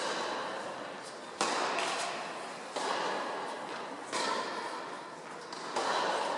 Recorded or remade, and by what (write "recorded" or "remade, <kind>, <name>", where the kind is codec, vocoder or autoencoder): recorded